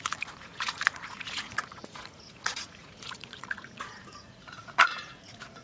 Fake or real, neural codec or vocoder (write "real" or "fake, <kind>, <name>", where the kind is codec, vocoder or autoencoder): fake, vocoder, Vocos